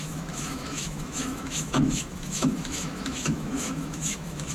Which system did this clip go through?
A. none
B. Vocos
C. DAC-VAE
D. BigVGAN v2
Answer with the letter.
C